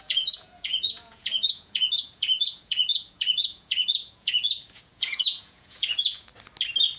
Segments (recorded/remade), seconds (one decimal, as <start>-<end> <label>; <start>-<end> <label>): 0.0-6.3 remade; 6.3-7.0 recorded